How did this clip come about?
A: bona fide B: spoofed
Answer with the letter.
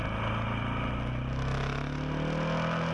A